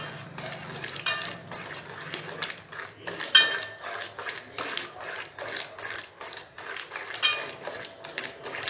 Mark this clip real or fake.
real